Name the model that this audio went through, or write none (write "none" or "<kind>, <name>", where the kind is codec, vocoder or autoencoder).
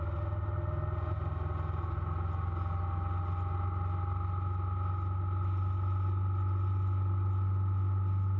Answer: none